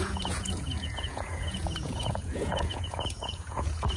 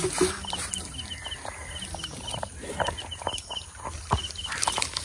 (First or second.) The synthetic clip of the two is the first